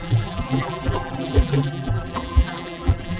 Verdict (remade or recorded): remade